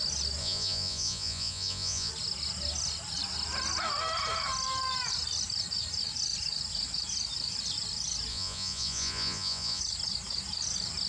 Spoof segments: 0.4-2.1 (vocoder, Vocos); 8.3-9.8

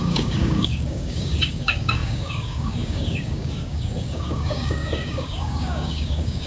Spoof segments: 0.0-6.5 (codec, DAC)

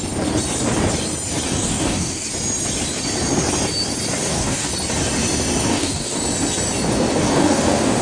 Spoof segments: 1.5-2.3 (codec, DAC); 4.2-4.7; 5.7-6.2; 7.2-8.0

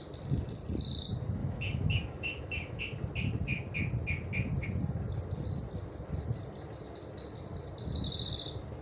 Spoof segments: 1.4-2.8 (autoencoder, DAC-VAE)

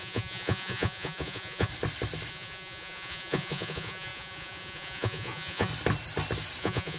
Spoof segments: 0.0-1.7 (vocoder, Vocos); 2.3-5.7; 6.6-7.0

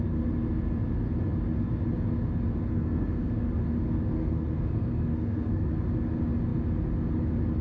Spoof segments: 2.7-3.5 (codec, SNAC); 4.1-5.7

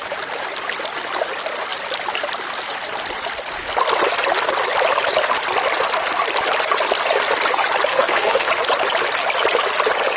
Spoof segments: 7.9-8.5 (codec, SNAC)

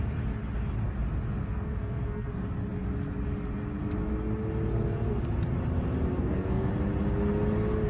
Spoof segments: 1.4-2.3 (codec, SNAC); 6.1-6.7